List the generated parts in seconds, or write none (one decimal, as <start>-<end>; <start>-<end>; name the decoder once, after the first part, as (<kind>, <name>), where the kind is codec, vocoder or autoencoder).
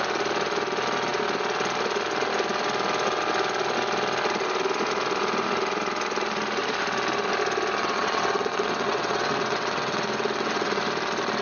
7.8-10.8 (vocoder, WaveNeXt)